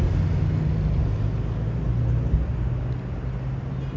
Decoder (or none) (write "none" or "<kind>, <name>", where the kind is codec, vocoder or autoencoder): none